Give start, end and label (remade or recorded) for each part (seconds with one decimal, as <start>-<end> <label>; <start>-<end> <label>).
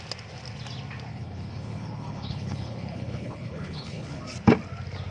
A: 0.0-1.1 recorded; 1.1-4.2 remade; 4.2-5.1 recorded